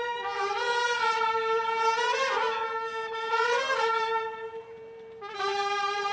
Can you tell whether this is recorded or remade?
remade